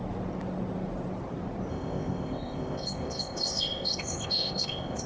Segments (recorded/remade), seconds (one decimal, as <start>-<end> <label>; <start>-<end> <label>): 0.0-1.7 recorded; 1.7-5.1 remade